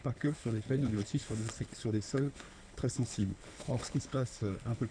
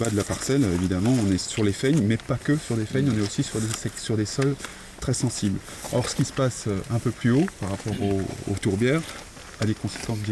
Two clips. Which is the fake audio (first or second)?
first